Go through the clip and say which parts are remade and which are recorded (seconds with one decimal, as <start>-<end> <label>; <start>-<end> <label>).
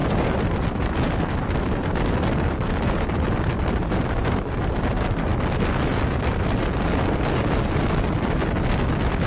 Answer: 0.0-9.3 recorded